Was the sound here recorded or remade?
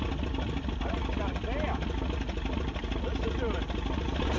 recorded